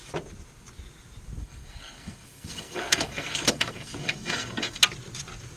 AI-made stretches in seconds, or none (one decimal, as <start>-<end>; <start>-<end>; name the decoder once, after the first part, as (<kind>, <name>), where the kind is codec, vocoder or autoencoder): 1.4-4.8 (codec, SNAC)